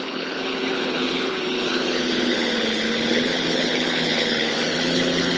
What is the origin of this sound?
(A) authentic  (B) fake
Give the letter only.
B